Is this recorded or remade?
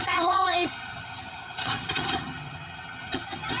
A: remade